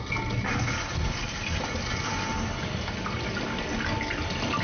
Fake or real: real